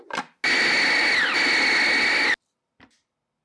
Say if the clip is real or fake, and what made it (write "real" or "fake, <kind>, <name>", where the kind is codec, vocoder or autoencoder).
real